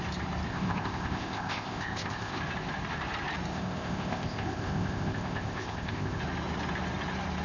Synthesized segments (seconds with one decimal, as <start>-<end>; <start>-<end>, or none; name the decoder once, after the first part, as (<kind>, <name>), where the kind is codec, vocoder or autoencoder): 0.5-2.4 (codec, ZipCodec); 3.5-6.2